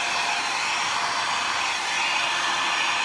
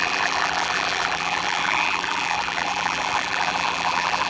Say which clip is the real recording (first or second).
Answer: first